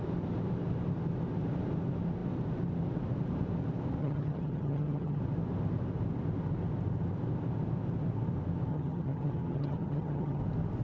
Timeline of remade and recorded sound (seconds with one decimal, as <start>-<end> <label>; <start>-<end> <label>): 0.0-4.0 recorded; 4.0-5.2 remade; 5.2-8.7 recorded; 8.7-10.4 remade; 10.4-10.8 recorded